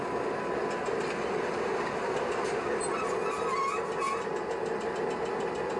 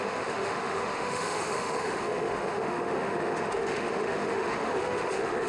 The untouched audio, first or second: first